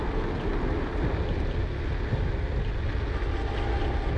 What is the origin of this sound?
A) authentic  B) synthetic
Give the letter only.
A